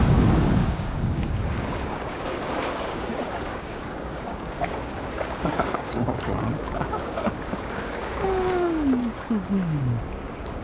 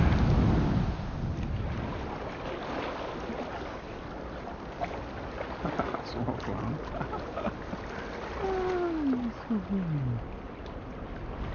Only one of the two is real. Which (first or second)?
second